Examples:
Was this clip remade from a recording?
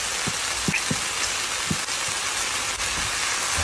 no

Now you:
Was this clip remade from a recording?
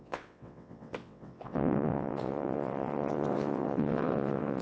yes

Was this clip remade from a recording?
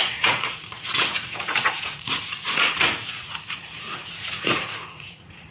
yes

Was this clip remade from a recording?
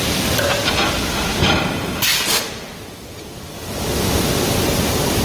no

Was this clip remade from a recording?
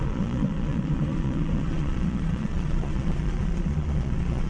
yes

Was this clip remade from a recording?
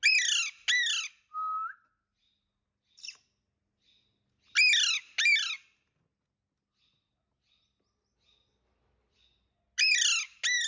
no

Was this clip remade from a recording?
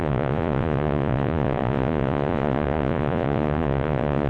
yes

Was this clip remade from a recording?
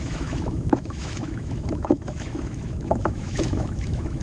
yes